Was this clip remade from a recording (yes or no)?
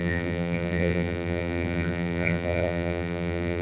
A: yes